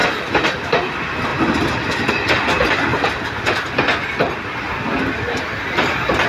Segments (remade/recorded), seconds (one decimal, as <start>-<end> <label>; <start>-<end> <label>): 0.0-6.3 recorded